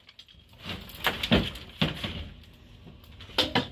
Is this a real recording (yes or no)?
yes